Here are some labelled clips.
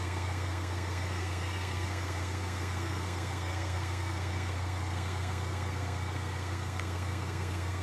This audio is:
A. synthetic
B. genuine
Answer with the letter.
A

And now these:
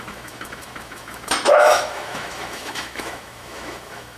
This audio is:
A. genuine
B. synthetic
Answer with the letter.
B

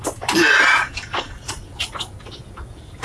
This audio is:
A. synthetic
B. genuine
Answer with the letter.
B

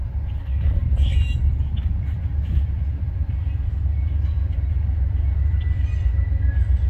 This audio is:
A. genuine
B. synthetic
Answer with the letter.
A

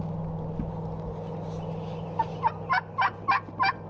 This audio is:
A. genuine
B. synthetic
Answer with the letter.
A